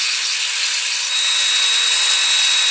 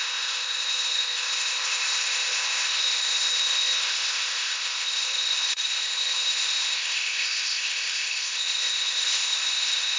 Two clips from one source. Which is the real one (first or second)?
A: first